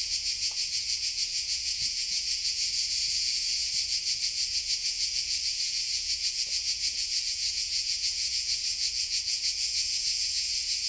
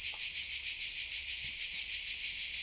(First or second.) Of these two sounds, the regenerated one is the first